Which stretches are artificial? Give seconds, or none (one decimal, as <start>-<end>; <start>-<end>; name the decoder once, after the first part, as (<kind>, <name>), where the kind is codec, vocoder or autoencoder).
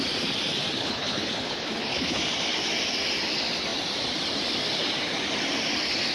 0.8-2.2 (codec, HILCodec)